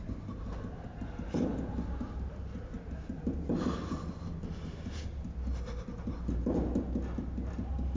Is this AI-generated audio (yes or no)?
no